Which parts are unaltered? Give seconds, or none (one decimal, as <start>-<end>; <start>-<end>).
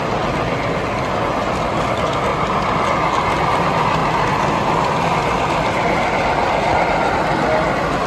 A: 0.0-8.1